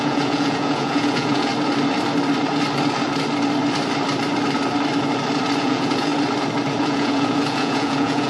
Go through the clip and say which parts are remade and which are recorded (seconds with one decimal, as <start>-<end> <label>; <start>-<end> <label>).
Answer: 0.0-1.5 remade; 1.5-5.6 recorded; 5.6-6.1 remade; 6.1-6.8 recorded; 6.8-8.3 remade